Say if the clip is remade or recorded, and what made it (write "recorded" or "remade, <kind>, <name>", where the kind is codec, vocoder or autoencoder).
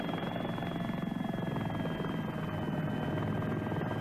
recorded